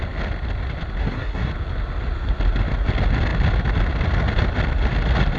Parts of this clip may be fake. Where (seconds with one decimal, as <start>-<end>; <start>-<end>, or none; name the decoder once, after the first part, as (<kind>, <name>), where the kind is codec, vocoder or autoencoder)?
1.0-1.5 (codec, SNAC)